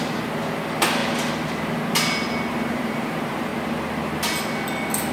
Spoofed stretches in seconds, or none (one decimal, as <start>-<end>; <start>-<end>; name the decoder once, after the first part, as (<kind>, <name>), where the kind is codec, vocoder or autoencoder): 0.0-1.0 (vocoder, BigVGAN v2); 2.5-3.5